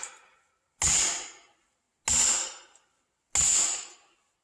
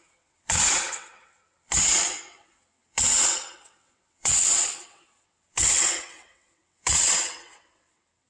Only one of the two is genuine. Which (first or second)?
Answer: first